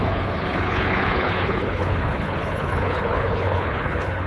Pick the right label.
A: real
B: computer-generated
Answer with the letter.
B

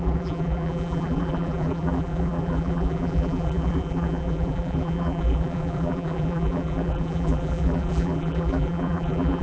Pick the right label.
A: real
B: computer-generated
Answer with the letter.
B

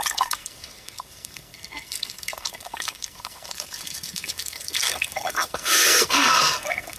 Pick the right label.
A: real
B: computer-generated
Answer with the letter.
B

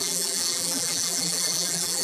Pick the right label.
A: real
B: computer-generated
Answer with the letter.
B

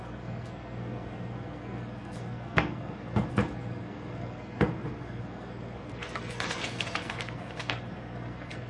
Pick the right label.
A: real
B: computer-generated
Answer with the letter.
B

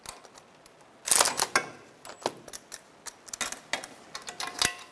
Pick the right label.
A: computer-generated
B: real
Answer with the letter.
B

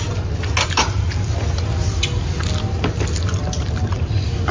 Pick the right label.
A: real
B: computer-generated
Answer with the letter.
A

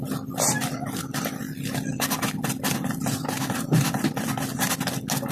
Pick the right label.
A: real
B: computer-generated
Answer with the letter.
A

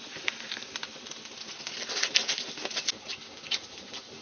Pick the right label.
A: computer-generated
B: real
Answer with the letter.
B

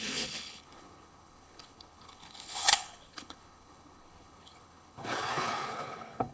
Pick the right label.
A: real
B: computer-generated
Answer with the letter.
B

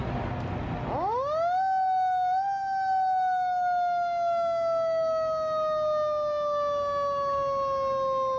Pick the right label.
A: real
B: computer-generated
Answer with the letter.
A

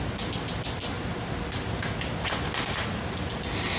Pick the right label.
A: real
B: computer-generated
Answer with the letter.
A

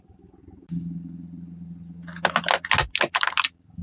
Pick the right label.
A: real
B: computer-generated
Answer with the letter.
A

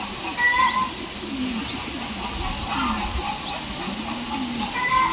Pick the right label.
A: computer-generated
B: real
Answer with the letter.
B